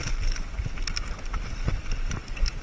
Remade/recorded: recorded